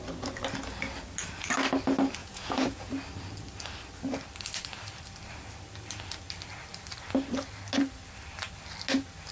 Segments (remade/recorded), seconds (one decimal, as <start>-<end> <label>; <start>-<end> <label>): 0.0-2.2 recorded; 2.2-2.9 remade; 2.9-9.3 recorded